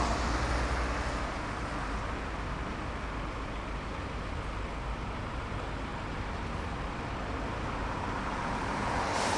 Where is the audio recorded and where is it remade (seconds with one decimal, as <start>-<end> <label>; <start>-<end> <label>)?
0.0-5.9 recorded; 5.9-9.4 remade